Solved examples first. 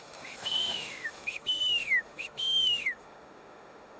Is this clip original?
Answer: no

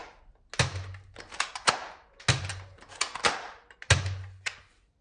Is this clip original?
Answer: yes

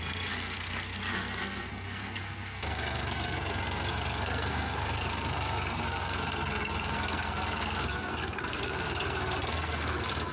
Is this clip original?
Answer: no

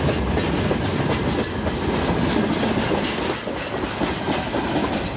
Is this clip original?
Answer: yes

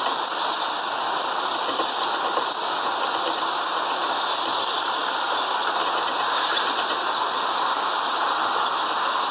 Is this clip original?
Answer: yes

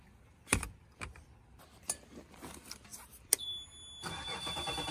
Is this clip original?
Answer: no